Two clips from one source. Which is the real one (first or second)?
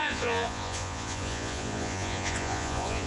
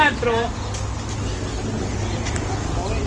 second